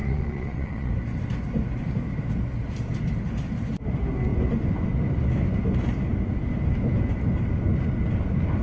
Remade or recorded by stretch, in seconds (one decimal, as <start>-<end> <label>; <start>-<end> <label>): 0.0-0.9 remade; 0.9-8.6 recorded